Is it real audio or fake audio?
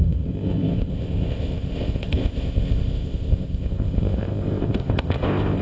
fake